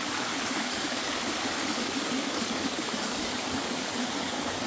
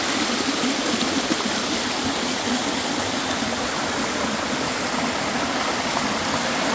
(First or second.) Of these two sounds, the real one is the second